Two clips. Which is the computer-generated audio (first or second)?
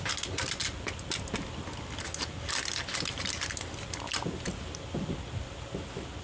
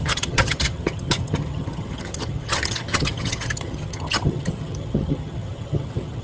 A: second